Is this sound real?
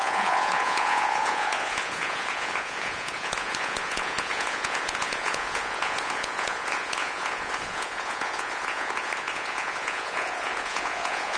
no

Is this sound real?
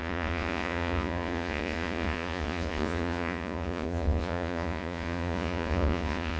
no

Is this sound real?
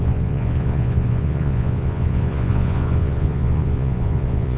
no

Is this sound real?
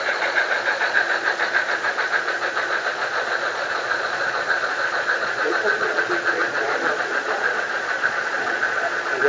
no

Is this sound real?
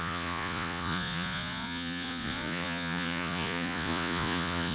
no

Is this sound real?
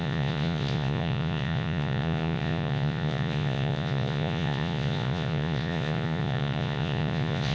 no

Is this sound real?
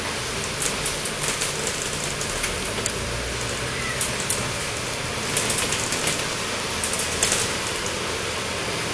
yes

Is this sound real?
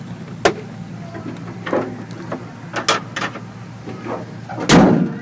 yes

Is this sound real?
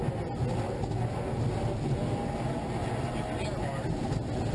yes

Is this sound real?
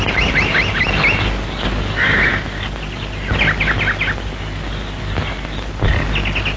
yes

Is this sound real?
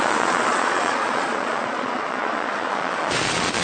no